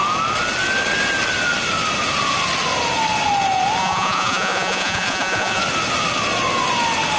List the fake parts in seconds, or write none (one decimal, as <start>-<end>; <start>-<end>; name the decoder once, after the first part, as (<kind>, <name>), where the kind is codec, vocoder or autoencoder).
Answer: 3.8-5.6 (vocoder, Vocos)